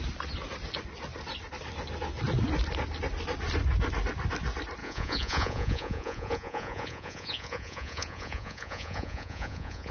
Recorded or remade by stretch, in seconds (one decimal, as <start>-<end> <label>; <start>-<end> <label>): 0.0-4.8 recorded; 4.8-9.9 remade